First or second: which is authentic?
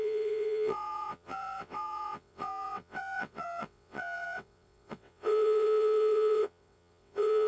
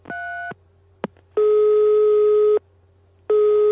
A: second